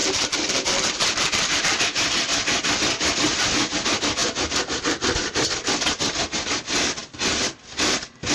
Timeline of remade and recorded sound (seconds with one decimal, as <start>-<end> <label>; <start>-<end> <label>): 0.0-2.1 remade; 2.1-8.3 recorded